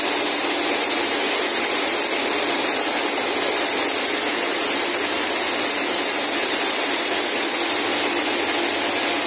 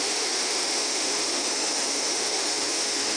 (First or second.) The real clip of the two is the first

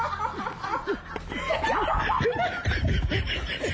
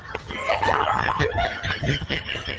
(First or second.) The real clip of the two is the first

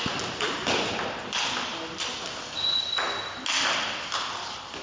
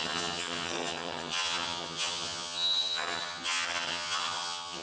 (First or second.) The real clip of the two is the first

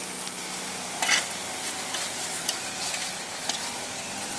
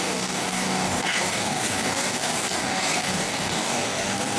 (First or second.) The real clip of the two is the first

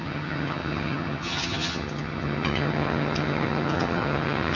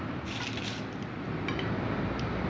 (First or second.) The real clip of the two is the second